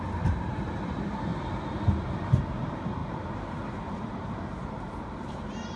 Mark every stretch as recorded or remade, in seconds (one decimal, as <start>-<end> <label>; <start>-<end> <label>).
0.0-1.3 remade; 1.3-2.5 recorded; 2.5-5.8 remade